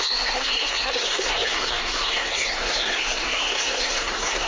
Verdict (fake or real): fake